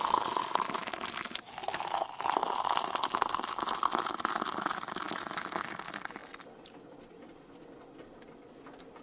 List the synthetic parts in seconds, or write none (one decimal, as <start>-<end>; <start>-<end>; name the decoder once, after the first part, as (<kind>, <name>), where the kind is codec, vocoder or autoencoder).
none

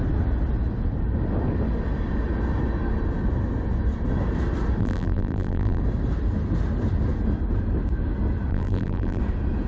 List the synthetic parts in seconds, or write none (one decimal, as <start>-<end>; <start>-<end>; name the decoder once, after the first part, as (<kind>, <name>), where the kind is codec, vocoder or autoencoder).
4.8-5.8 (vocoder, BigVGAN v2); 8.5-9.2

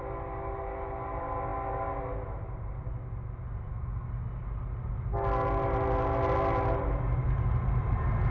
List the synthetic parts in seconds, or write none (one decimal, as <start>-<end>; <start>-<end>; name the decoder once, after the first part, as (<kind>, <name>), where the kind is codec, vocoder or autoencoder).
none

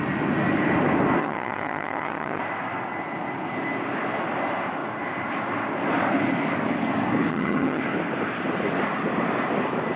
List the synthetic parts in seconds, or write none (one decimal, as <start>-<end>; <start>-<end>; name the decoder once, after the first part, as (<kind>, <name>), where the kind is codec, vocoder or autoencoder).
1.2-2.4 (vocoder, HiFi-GAN); 7.3-7.8

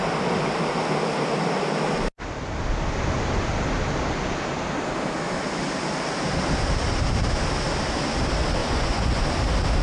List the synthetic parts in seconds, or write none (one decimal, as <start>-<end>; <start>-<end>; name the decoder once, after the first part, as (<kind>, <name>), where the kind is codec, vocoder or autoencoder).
8.6-9.2 (vocoder, Vocos)

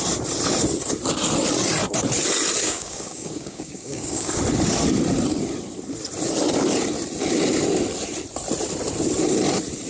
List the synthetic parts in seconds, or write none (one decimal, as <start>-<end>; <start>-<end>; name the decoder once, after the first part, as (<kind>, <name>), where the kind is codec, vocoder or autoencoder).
2.6-4.4 (codec, DAC)

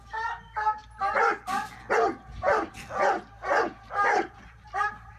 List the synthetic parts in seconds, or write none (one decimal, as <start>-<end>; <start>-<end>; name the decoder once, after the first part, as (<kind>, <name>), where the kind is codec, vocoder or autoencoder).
0.0-0.8 (vocoder, BigVGAN v2); 3.9-5.2